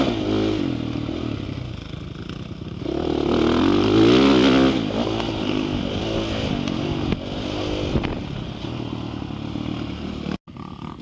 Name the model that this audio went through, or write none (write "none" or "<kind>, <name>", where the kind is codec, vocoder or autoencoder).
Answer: none